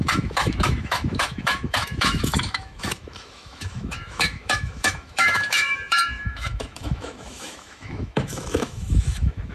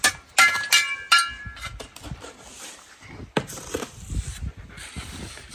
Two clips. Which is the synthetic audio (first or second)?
first